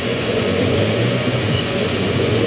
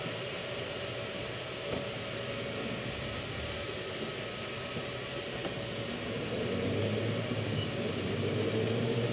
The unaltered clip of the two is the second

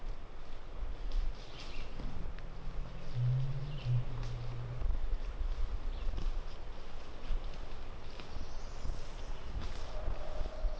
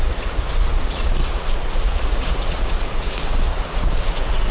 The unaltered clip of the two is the first